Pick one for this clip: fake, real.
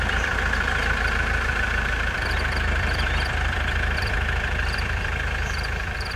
fake